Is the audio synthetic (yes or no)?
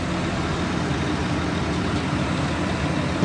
no